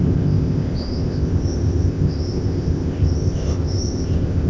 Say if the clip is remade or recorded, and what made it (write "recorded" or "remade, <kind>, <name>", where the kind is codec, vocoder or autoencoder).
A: remade, codec, ZipCodec